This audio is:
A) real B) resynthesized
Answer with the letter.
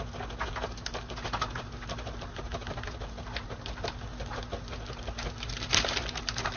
A